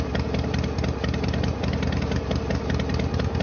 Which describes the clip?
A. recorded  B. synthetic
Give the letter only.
A